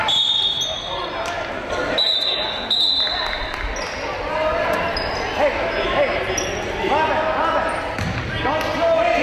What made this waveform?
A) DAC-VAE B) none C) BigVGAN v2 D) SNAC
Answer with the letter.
B